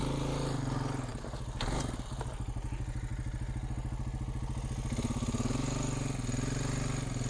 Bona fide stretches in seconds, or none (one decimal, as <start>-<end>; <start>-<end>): 0.0-7.3